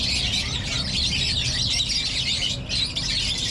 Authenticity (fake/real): real